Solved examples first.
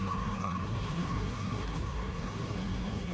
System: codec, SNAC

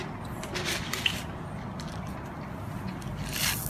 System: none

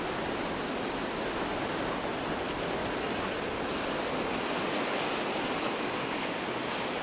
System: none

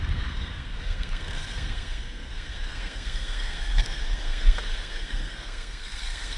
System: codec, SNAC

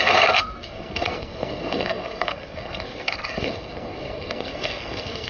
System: codec, SNAC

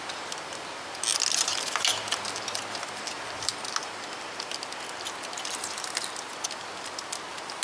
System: none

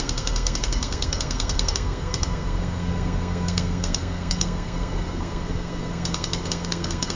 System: codec, SNAC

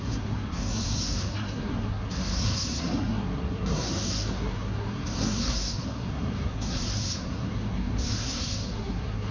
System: codec, SNAC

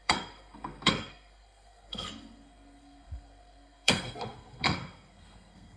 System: codec, SNAC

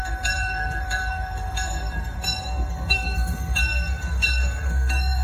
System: codec, SNAC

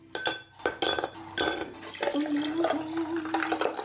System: none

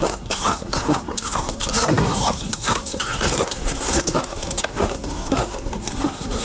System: codec, SNAC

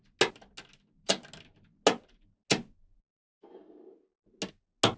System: none